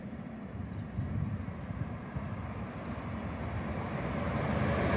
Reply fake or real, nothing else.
real